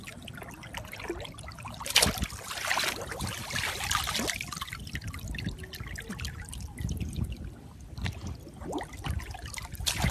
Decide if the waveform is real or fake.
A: real